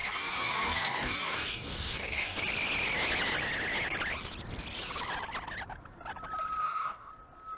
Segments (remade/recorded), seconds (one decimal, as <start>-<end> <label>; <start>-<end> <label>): 0.0-2.4 remade; 2.4-6.6 recorded; 6.6-7.1 remade; 7.1-7.6 recorded